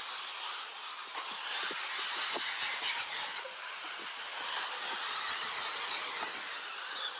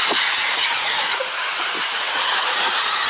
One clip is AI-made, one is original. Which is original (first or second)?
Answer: first